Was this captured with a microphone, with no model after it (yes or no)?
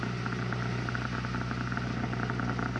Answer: yes